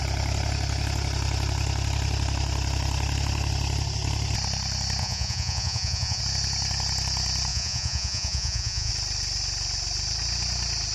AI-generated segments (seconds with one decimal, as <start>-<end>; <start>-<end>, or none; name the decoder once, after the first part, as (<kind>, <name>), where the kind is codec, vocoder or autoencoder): 5.0-6.2 (vocoder, Vocos); 7.5-8.9